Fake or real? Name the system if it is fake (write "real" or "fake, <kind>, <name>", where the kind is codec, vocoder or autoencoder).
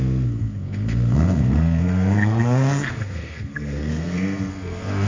fake, codec, SNAC